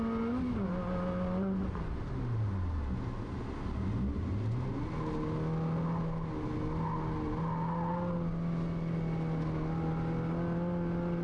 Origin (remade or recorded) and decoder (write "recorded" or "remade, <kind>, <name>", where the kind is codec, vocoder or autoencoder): recorded